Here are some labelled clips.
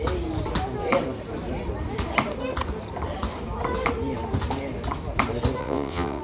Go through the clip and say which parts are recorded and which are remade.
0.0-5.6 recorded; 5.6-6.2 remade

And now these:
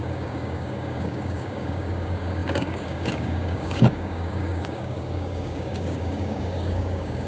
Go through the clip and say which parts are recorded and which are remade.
0.0-7.3 remade

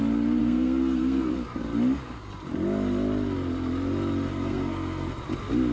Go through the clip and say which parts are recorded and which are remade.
0.0-0.4 recorded; 0.4-1.3 remade; 1.3-4.3 recorded; 4.3-5.1 remade; 5.1-5.7 recorded

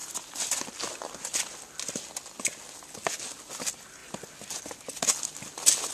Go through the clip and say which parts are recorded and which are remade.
0.0-5.9 recorded

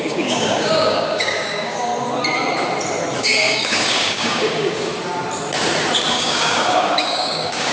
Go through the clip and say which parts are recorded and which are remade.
0.0-1.9 remade; 1.9-3.2 recorded; 3.2-4.9 remade; 4.9-6.1 recorded; 6.1-7.7 remade

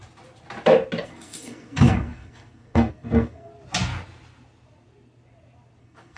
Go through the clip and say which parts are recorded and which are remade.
0.0-1.0 recorded; 1.0-3.5 remade; 3.5-5.8 recorded; 5.8-6.2 remade

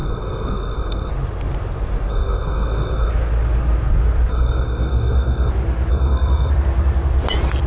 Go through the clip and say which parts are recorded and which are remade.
0.0-1.1 remade; 1.1-2.1 recorded; 2.1-3.1 remade; 3.1-4.3 recorded; 4.3-5.5 remade; 5.5-5.9 recorded; 5.9-6.5 remade; 6.5-7.7 recorded

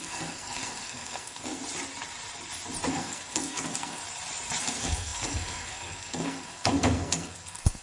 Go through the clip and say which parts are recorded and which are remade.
0.0-1.6 remade; 1.6-2.9 recorded; 2.9-4.0 remade; 4.0-4.6 recorded; 4.6-7.8 remade